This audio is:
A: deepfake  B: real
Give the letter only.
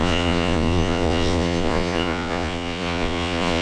A